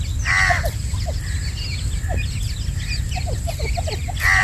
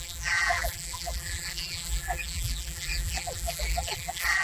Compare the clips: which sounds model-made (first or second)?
second